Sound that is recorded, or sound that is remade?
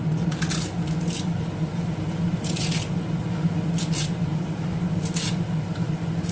recorded